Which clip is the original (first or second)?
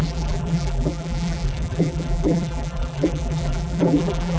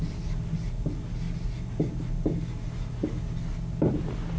second